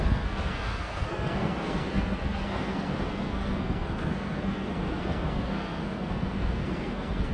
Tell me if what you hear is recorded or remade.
remade